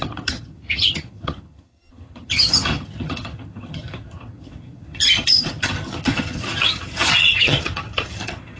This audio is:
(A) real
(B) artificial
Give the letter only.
B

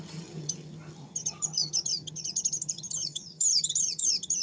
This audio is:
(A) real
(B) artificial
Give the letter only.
B